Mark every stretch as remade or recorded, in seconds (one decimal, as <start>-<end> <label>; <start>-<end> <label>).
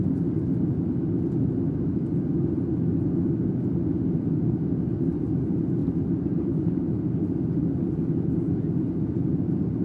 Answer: 0.0-9.8 recorded